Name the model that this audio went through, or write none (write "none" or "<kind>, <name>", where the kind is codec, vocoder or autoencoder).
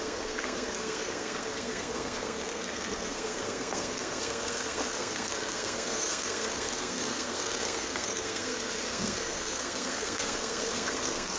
codec, SNAC